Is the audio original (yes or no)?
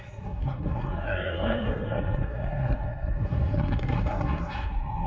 no